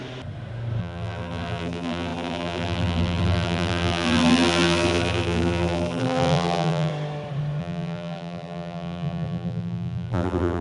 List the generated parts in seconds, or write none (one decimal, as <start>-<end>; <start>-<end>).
0.8-6.9; 7.6-10.6

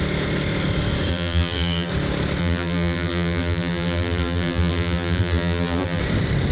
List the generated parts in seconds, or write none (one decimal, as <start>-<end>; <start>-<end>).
1.1-1.9; 2.4-6.0

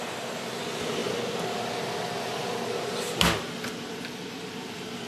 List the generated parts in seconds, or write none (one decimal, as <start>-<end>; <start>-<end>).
0.0-1.0; 4.1-5.1

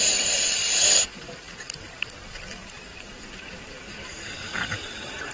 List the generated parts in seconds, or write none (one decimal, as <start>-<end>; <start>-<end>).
0.6-1.6

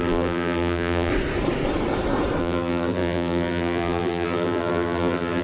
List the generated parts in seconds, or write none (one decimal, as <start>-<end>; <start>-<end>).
0.0-1.1; 2.4-5.4